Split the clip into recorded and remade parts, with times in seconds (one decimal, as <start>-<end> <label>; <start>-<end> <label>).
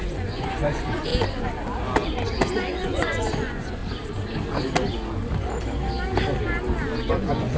0.0-1.1 remade; 1.1-2.5 recorded; 2.5-3.8 remade; 3.8-7.1 recorded; 7.1-7.6 remade